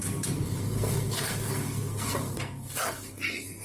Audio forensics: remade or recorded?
remade